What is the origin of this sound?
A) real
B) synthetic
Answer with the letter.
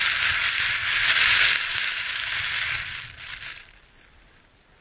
A